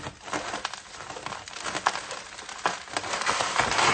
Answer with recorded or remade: recorded